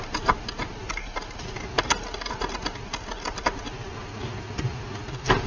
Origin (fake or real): real